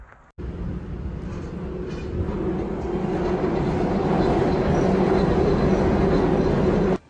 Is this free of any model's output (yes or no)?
yes